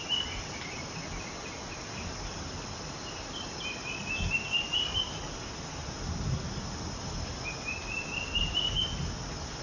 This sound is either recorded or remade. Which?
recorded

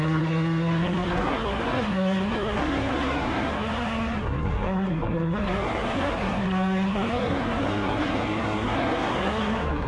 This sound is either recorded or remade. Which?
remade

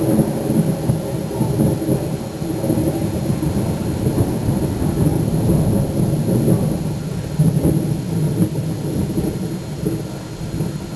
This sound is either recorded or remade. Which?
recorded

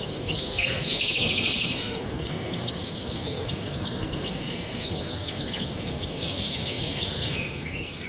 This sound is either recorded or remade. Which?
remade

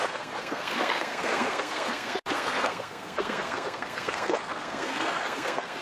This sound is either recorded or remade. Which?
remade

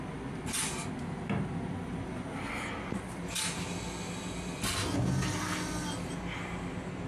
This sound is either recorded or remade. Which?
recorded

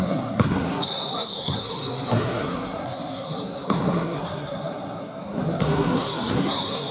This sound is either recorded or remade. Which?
remade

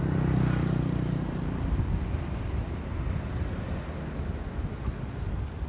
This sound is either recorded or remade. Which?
recorded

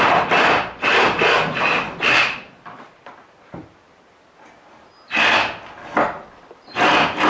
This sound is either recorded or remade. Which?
recorded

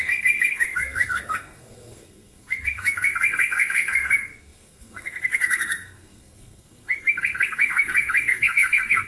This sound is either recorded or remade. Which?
remade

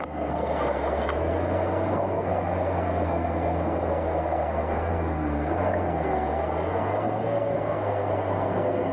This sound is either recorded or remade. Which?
remade